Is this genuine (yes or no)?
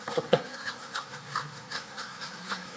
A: no